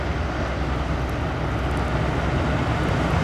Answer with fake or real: real